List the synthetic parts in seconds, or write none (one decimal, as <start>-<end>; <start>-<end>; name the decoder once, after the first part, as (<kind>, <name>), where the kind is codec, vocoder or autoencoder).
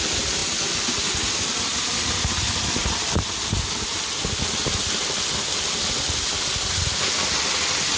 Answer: none